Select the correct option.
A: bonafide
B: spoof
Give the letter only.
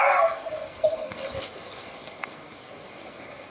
B